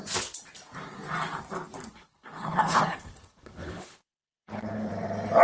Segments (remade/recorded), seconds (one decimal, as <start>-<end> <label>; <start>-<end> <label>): 0.0-1.9 recorded; 1.9-4.9 remade; 4.9-5.4 recorded